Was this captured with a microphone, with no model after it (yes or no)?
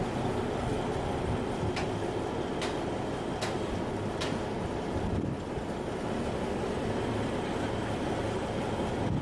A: yes